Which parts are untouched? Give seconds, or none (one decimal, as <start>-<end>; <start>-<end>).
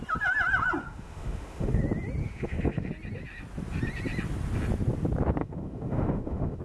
0.0-0.8; 1.8-2.2; 2.9-5.4